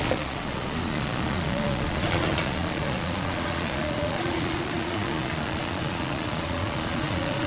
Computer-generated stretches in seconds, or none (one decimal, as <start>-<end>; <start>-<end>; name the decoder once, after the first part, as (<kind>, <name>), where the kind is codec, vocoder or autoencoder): 0.0-7.5 (vocoder, Vocos)